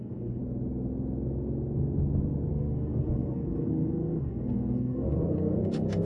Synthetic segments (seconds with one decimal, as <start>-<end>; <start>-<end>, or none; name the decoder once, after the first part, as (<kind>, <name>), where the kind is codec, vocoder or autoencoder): 0.0-0.4 (codec, SNAC); 2.5-6.1